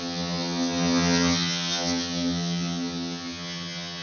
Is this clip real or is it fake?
fake